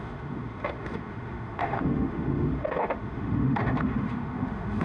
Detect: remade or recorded remade